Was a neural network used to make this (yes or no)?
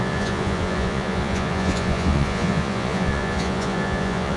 yes